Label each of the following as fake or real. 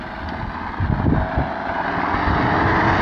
real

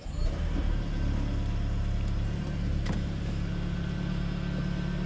real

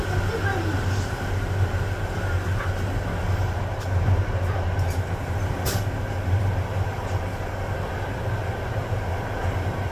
real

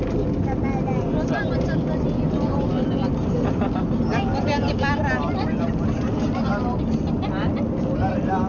real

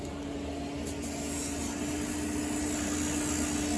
real